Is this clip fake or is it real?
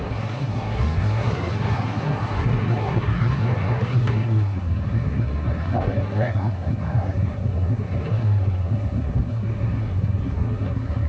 fake